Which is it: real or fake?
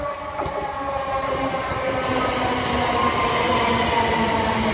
real